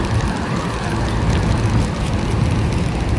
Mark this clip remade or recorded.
recorded